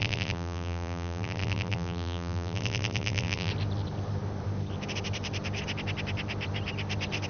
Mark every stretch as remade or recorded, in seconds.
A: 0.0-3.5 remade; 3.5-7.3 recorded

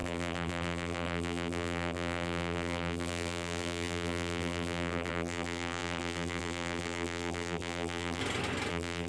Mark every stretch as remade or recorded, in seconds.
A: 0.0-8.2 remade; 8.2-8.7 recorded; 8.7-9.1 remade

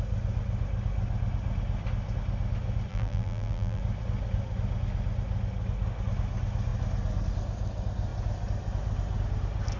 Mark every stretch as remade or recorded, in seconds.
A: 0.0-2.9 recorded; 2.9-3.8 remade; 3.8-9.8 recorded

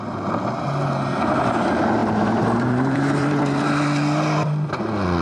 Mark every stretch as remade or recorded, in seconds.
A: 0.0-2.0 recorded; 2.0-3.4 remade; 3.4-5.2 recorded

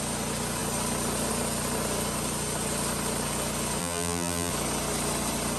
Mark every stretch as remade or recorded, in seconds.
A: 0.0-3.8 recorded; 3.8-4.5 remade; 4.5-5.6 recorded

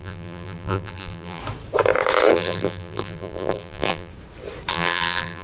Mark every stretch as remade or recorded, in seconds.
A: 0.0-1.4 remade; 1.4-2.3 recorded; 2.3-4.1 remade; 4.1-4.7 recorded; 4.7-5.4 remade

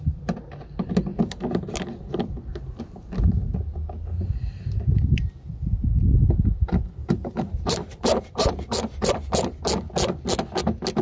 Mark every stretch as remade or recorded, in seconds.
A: 0.0-7.0 recorded; 7.0-9.3 remade; 9.3-11.0 recorded

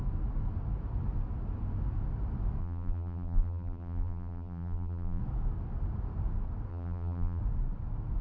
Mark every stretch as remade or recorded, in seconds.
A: 0.0-2.6 recorded; 2.6-5.2 remade; 5.2-6.7 recorded; 6.7-7.4 remade; 7.4-8.2 recorded